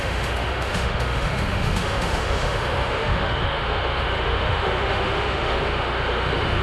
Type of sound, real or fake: fake